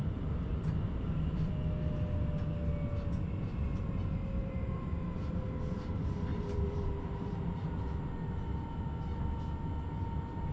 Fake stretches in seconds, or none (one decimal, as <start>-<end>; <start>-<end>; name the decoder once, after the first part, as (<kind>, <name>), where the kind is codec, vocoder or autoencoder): 0.0-1.5 (vocoder, BigVGAN v2); 4.4-5.0; 6.3-7.7